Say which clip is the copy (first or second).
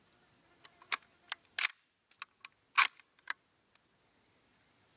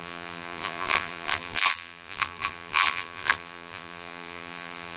second